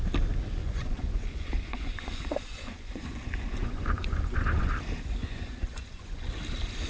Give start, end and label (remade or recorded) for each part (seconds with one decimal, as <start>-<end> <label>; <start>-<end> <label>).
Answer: 0.0-0.6 recorded; 0.6-4.7 remade; 4.7-5.2 recorded; 5.2-6.3 remade; 6.3-6.9 recorded